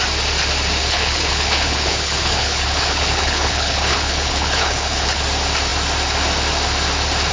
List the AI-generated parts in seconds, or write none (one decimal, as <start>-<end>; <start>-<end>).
0.8-5.2